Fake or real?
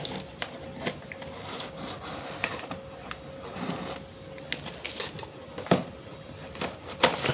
real